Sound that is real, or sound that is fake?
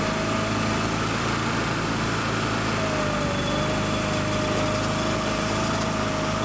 real